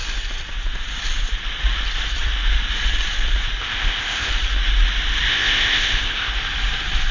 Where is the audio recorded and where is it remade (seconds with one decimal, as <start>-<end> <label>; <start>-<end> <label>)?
0.0-3.6 recorded; 3.6-4.3 remade; 4.3-5.3 recorded; 5.3-6.3 remade; 6.3-7.1 recorded